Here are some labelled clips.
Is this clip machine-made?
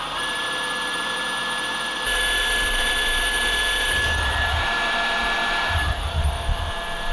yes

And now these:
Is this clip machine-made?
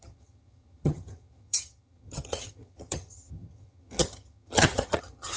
yes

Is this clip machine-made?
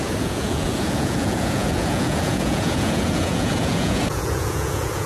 yes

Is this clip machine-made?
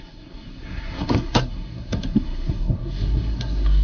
yes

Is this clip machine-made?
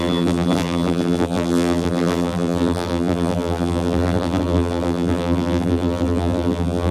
yes